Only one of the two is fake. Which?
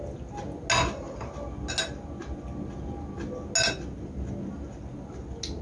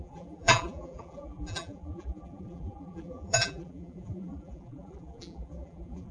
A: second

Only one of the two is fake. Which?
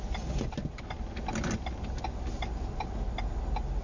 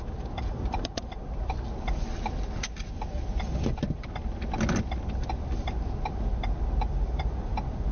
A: second